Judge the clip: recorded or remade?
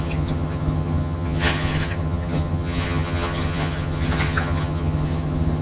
remade